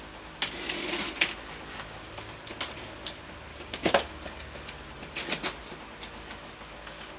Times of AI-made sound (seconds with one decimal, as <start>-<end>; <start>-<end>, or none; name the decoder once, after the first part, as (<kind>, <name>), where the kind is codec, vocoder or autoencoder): 3.5-4.1 (codec, DAC)